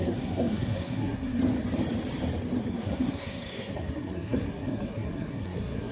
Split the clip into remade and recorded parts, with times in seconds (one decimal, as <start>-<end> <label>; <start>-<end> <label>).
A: 0.0-1.4 remade; 1.4-2.6 recorded; 2.6-5.9 remade